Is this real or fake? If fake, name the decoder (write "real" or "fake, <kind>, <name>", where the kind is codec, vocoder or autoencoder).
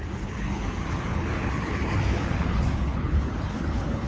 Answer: fake, codec, HILCodec